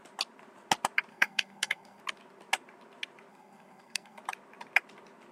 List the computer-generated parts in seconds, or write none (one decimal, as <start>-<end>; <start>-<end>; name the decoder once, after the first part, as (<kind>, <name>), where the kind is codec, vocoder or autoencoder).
1.1-2.0 (codec, SNAC); 3.3-4.2